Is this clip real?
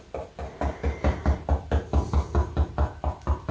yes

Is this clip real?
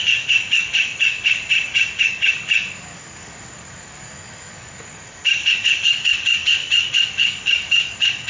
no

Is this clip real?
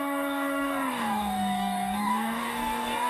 no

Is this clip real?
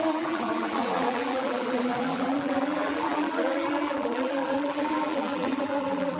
no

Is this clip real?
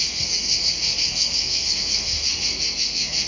no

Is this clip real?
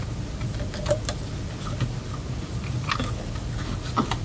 yes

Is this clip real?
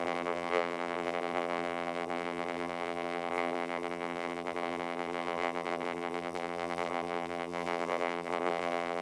no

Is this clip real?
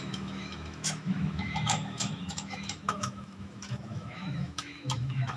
no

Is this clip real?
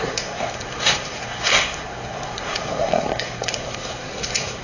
no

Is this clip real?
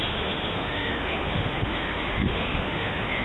no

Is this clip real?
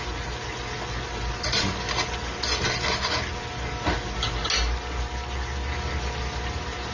yes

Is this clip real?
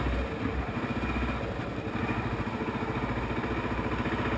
yes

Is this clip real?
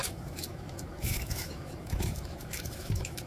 no